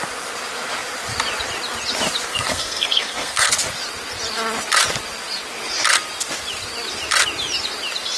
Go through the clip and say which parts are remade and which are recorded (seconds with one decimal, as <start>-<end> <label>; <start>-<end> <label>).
0.0-2.3 recorded; 2.3-3.5 remade; 3.5-8.2 recorded